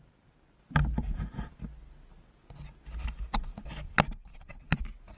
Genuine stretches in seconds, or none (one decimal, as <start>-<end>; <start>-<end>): 0.0-4.3; 4.8-5.2